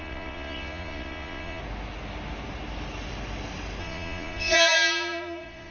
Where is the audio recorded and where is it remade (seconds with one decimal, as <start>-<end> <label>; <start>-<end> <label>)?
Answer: 0.0-1.6 remade; 1.6-3.8 recorded; 3.8-5.7 remade